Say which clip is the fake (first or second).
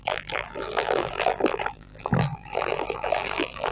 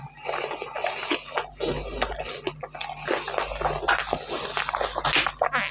first